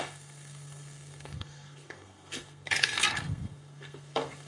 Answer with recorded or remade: remade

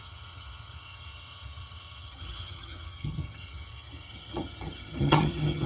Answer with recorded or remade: remade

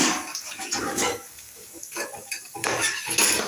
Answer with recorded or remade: remade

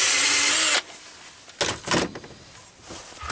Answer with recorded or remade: recorded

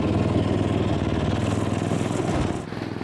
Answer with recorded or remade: recorded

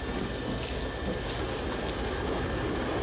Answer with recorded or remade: recorded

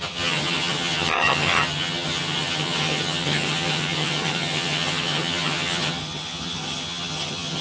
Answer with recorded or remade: remade